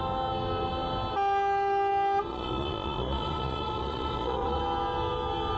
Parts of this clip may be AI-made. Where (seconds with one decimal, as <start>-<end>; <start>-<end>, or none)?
2.3-4.6

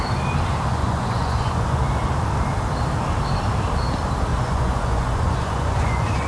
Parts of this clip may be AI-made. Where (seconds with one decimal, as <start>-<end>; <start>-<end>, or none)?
0.7-1.8; 4.3-6.3

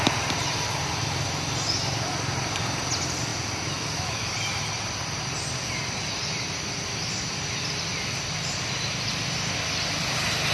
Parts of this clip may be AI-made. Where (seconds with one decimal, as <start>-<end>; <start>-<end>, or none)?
none

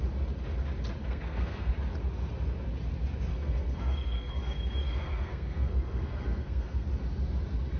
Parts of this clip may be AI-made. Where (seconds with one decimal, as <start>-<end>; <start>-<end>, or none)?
1.0-1.7; 3.3-4.3; 4.8-6.9

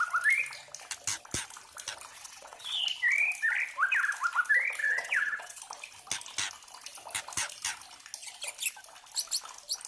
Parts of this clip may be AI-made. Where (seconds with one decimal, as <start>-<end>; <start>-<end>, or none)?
2.1-2.8; 4.8-5.6

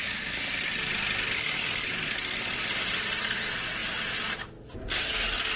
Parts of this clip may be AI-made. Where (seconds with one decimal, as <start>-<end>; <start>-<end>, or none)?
none

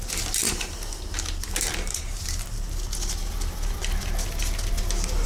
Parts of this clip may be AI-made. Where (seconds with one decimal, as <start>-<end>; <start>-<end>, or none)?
none

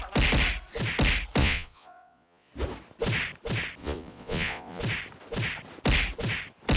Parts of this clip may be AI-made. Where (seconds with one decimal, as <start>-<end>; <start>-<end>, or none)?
1.4-2.5; 3.8-4.8